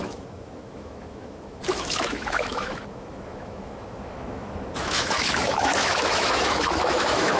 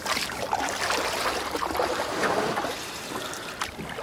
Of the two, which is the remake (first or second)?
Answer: first